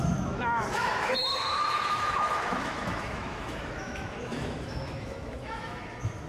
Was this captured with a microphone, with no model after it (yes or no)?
no